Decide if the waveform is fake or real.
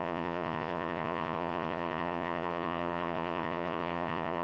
fake